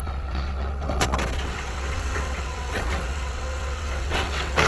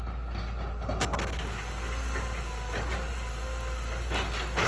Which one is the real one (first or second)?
second